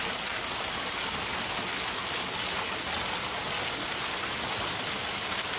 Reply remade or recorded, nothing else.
recorded